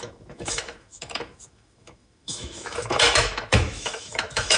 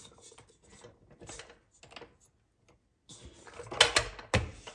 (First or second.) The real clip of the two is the second